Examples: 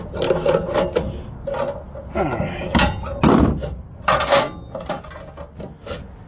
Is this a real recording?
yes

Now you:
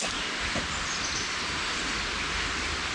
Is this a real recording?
yes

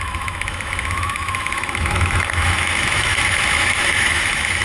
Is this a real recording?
no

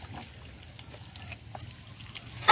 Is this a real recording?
yes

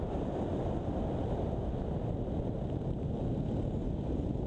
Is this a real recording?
yes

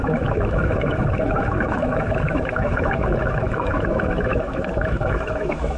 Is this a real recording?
no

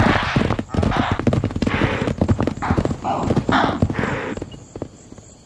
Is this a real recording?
yes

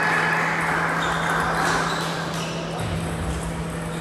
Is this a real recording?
yes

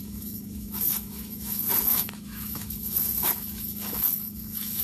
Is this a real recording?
no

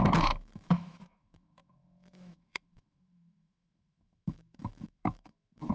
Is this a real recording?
no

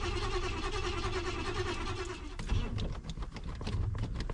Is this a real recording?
yes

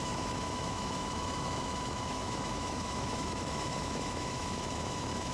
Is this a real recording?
no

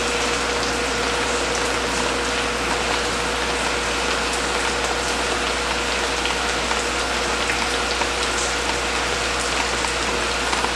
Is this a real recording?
yes